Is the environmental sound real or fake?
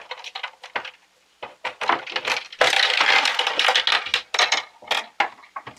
real